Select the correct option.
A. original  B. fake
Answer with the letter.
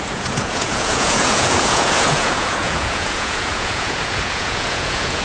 B